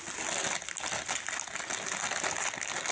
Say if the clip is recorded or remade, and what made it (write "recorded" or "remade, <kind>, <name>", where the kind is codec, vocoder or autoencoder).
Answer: recorded